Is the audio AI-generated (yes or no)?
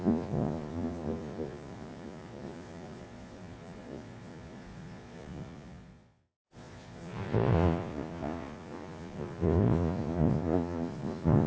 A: yes